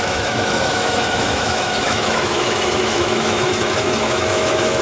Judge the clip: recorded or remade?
remade